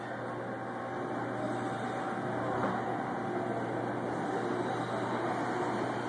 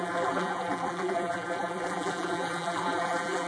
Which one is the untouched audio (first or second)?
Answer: first